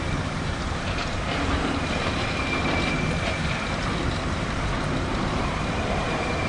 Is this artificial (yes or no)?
yes